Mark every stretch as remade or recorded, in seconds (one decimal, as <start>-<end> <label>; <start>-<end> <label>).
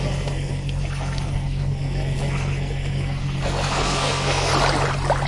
0.0-4.5 remade; 4.5-5.3 recorded